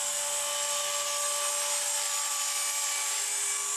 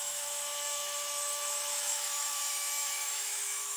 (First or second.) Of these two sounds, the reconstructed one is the second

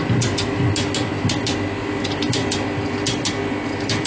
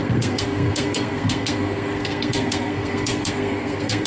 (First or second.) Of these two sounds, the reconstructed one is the second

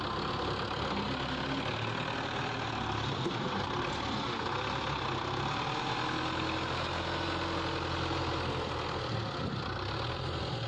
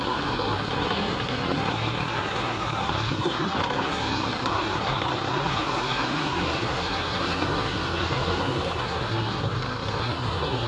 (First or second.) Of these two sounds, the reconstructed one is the second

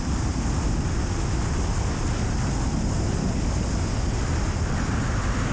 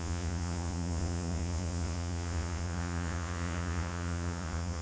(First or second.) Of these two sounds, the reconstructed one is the second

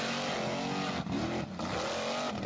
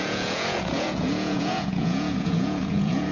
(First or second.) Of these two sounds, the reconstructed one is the second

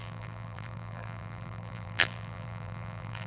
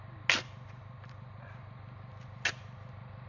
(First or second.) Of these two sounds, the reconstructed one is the first